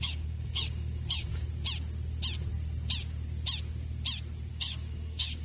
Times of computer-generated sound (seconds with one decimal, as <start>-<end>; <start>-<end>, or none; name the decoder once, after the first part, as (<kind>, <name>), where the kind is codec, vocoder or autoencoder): 0.0-1.3 (codec, DAC); 4.5-5.4